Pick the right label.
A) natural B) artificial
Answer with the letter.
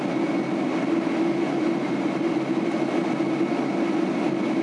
A